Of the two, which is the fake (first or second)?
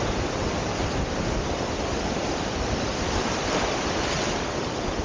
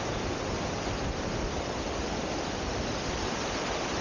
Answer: first